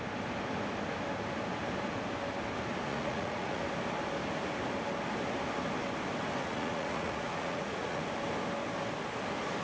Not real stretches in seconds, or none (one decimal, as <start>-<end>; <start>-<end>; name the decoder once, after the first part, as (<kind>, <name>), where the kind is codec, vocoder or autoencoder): 2.9-3.6 (vocoder, Vocos); 6.4-8.0